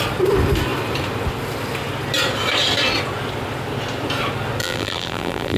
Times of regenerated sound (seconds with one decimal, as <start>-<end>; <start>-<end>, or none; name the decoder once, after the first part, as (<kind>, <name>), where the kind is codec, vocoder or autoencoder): 4.6-5.6 (vocoder, BigVGAN v2)